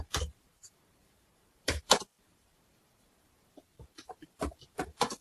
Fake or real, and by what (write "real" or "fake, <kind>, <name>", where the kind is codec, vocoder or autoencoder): fake, vocoder, BigVGAN v2